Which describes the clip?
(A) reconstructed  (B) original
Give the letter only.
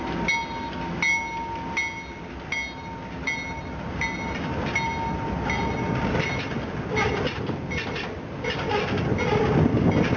B